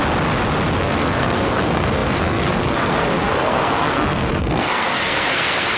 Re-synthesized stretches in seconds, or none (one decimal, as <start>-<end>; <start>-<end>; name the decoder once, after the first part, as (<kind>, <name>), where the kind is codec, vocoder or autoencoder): 0.8-5.8 (codec, SNAC)